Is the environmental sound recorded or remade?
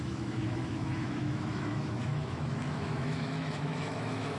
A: remade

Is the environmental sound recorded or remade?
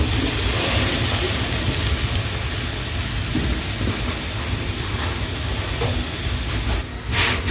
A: recorded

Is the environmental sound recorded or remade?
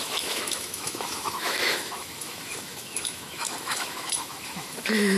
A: remade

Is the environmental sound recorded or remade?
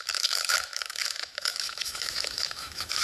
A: remade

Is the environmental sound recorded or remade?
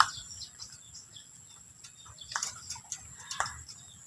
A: recorded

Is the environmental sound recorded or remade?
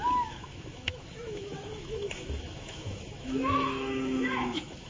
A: remade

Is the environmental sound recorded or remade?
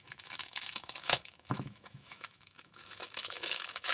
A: remade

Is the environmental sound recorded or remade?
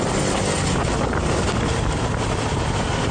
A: recorded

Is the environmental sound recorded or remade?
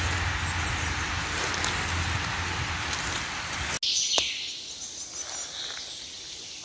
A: recorded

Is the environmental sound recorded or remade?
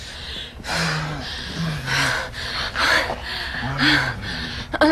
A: recorded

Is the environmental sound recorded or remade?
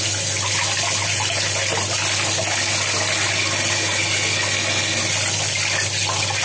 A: recorded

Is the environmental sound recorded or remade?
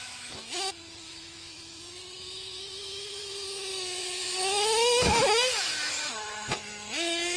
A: remade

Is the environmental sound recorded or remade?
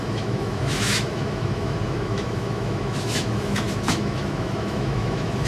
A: remade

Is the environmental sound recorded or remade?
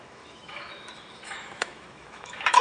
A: remade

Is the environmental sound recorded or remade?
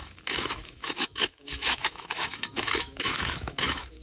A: remade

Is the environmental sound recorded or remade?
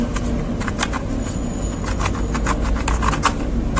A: recorded